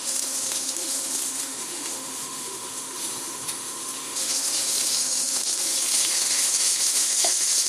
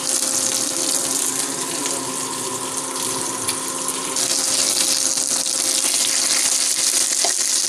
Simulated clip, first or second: first